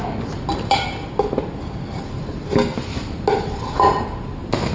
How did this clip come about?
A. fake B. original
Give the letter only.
B